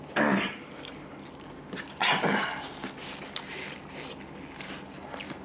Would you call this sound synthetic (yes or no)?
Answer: no